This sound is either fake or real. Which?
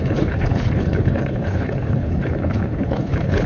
fake